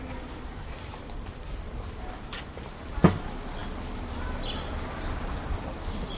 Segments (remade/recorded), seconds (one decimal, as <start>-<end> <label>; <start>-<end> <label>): 0.0-6.2 recorded